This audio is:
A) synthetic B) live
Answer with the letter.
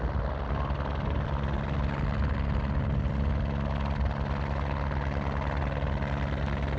B